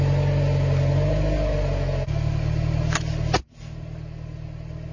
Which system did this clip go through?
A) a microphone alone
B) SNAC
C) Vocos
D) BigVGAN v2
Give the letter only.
A